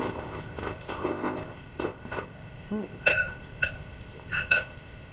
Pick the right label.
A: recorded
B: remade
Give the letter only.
B